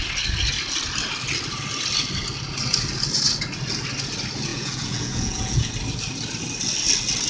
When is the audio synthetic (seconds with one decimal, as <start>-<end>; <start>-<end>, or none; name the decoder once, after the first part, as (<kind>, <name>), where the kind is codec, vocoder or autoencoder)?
4.5-5.7 (vocoder, Vocos)